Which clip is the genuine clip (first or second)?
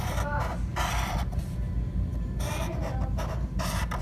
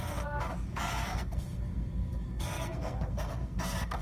first